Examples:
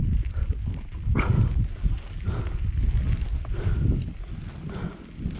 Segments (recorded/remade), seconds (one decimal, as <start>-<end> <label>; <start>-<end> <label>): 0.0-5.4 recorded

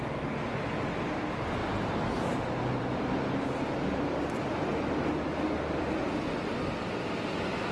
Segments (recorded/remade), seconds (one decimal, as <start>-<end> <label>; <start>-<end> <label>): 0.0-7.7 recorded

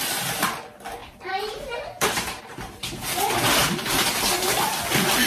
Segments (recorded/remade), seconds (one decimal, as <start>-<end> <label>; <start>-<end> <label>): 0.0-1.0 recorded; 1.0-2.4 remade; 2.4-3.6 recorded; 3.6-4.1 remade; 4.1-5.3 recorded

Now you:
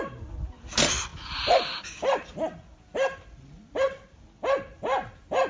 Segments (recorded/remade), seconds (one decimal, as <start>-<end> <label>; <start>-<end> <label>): 0.0-5.5 recorded

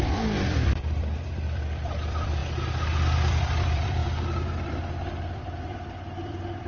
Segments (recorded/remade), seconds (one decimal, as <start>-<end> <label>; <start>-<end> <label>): 0.0-2.4 remade; 2.4-3.3 recorded; 3.3-6.7 remade

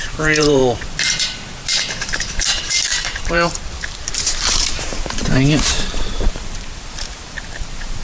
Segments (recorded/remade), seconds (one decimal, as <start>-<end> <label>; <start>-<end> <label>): 0.0-0.6 remade; 0.6-1.2 recorded; 1.2-3.6 remade; 3.6-4.1 recorded; 4.1-8.0 remade

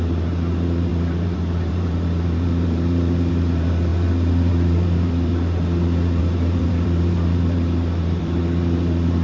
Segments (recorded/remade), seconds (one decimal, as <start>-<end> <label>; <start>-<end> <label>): 0.0-5.3 remade; 5.3-6.2 recorded; 6.2-9.2 remade